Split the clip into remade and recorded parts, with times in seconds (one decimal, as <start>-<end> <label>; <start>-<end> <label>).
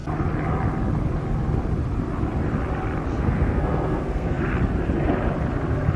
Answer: 0.0-3.1 recorded; 3.1-4.5 remade; 4.5-6.0 recorded